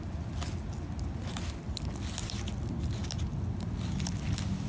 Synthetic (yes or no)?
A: no